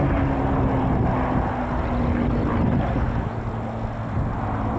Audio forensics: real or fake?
real